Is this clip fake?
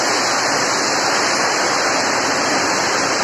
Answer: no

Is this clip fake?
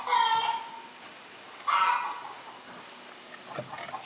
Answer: no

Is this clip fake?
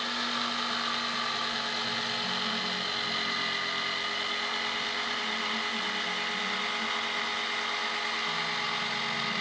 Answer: no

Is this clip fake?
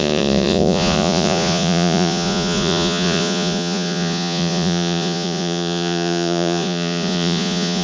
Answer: yes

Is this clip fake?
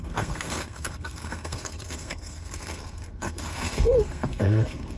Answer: yes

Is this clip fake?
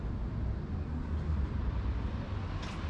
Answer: no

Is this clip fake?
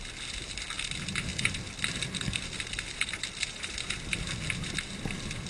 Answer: no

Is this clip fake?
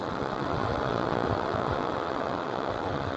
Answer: yes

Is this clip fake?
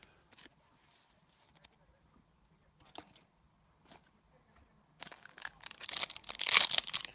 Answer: no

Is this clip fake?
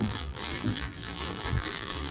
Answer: yes